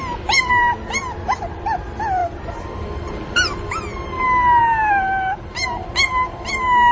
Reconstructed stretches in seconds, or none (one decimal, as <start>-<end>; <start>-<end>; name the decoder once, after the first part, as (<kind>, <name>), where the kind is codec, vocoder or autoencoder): none